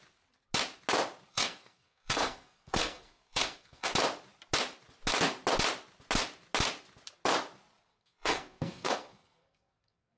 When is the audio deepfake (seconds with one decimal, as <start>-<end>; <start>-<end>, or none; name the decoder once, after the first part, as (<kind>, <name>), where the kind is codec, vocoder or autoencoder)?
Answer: 1.3-3.9 (codec, SNAC); 7.9-10.2